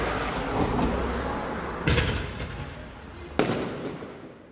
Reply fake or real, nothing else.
real